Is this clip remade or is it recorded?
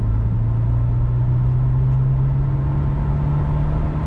recorded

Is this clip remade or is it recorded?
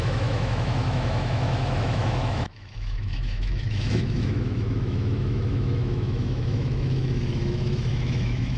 remade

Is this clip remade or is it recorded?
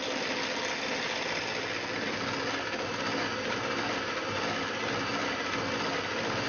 recorded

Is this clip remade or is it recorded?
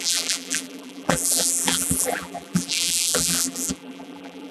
remade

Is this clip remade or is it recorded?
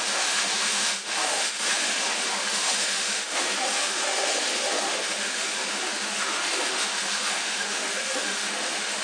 remade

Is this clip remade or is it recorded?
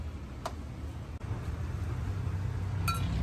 recorded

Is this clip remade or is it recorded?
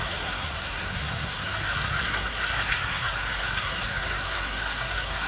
remade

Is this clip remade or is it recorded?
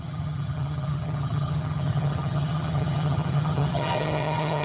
remade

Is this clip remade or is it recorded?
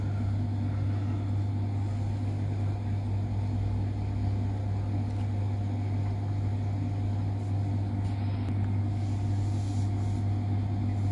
recorded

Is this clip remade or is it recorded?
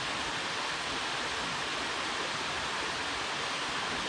recorded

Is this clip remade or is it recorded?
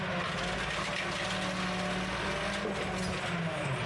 recorded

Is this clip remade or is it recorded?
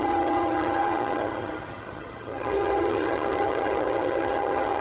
remade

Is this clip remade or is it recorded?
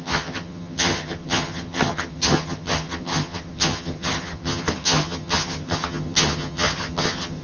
remade